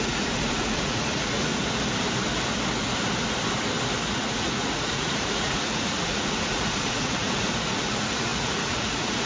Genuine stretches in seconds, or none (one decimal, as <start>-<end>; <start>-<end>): 1.5-4.2

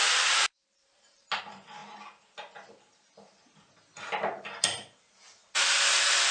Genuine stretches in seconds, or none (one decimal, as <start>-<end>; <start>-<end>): 1.8-4.6; 5.4-6.3

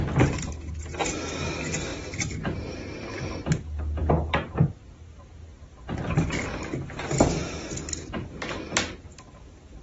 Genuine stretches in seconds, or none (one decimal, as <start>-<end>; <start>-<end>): 0.0-1.9; 2.8-9.8

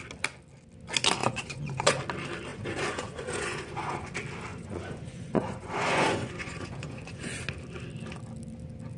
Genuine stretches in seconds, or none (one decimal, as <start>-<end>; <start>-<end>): 0.0-1.2; 2.0-2.5; 4.1-4.5; 7.4-9.0

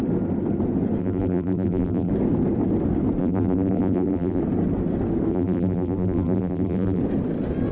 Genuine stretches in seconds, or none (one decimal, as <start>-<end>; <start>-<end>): 0.0-1.0; 2.1-3.2; 4.4-5.3; 7.0-7.7

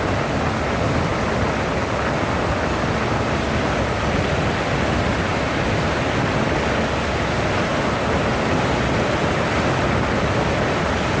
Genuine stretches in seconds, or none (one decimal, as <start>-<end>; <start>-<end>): 0.0-11.2